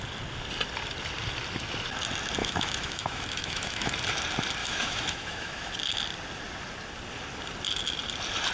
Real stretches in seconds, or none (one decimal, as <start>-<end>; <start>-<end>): 0.0-2.4; 3.9-4.6; 5.7-8.5